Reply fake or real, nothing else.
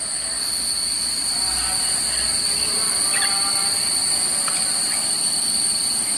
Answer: real